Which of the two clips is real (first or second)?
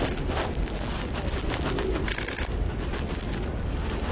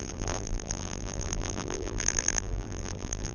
first